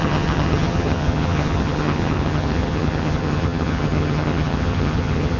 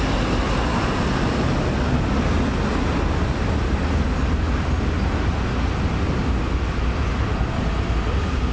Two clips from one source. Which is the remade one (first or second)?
first